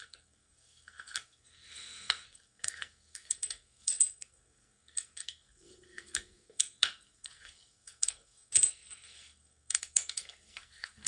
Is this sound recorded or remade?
remade